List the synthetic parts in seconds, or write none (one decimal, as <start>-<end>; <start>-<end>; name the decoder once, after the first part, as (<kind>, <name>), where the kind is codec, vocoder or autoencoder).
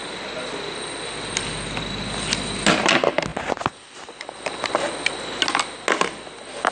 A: none